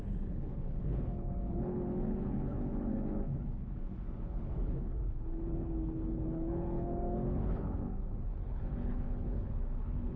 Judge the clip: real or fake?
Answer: fake